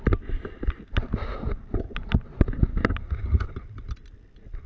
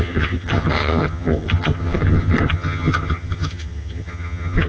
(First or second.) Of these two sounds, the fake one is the second